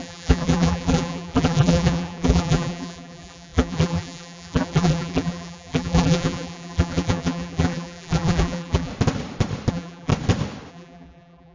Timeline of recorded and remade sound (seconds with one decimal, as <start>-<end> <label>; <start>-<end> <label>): 0.0-8.9 remade; 8.9-9.7 recorded; 9.7-10.1 remade; 10.1-10.7 recorded; 10.7-11.5 remade